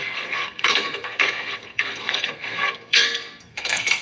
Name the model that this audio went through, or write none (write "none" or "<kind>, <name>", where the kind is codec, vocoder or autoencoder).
codec, SNAC